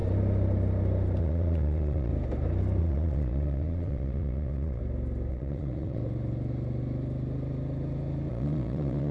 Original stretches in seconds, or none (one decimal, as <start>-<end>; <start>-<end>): 0.0-1.2; 2.1-2.8; 4.8-5.3; 6.0-8.3